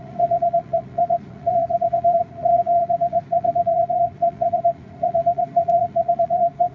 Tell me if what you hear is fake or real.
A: fake